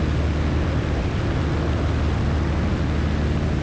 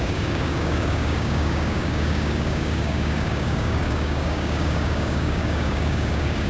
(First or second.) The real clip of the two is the first